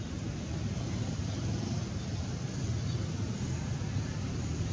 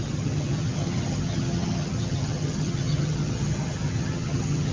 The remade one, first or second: second